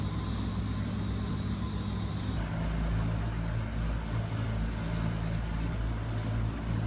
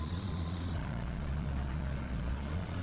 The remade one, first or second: second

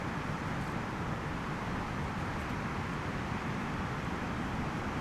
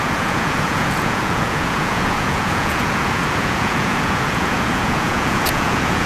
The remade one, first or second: second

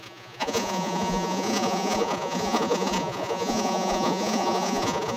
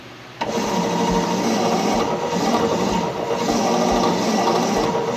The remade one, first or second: first